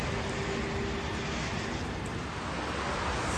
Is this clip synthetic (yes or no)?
no